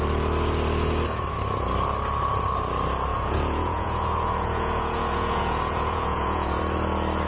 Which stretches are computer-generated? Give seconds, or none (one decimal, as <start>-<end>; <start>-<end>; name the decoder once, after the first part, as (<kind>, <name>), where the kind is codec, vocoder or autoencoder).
3.1-6.6 (vocoder, Vocos)